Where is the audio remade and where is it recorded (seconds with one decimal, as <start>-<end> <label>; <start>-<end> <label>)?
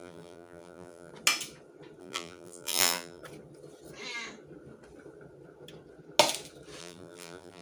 0.0-1.1 remade; 1.1-2.0 recorded; 2.0-3.2 remade; 3.2-6.8 recorded; 6.8-7.6 remade